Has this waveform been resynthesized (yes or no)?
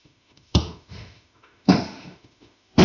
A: yes